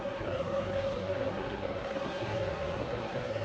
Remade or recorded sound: remade